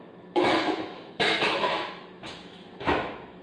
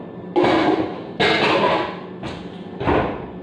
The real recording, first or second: second